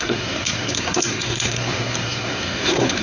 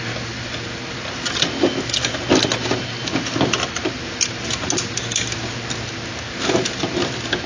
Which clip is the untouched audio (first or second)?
second